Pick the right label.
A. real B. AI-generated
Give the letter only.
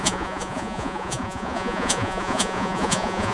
B